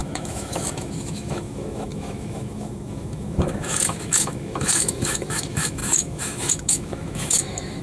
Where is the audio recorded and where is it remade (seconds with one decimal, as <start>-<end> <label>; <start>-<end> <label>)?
0.0-7.8 remade